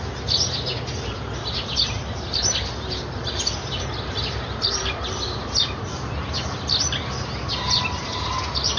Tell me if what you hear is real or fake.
real